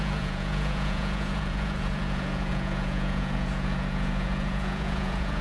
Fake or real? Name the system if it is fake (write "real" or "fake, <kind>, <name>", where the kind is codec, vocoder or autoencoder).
fake, vocoder, Vocos